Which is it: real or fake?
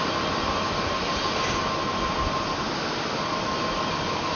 real